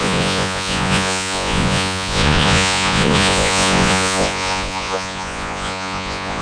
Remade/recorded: remade